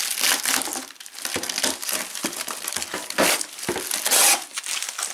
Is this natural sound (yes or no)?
yes